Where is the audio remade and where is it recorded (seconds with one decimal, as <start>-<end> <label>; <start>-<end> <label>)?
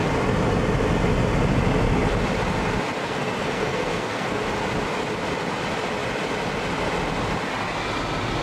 0.0-3.0 recorded; 3.0-4.4 remade; 4.4-8.4 recorded